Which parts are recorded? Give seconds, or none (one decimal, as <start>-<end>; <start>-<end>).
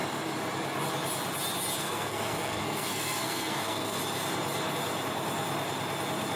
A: 0.0-1.8; 4.0-6.4